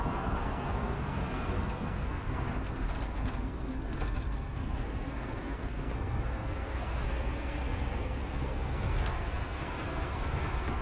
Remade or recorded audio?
remade